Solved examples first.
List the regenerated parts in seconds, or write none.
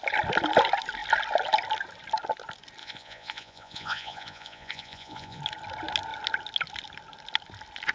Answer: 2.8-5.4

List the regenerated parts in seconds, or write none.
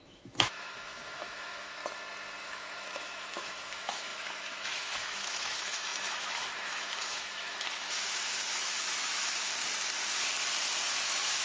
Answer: 0.0-1.8; 2.4-9.5; 11.0-11.4